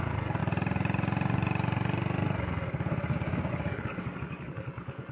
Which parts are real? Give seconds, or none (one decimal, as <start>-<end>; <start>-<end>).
0.4-3.5